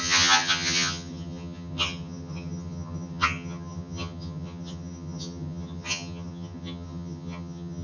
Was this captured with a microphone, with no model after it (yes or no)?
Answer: no